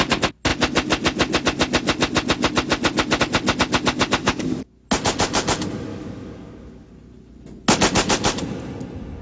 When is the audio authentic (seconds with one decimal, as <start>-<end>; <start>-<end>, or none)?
0.0-4.2; 4.7-5.9; 6.9-9.2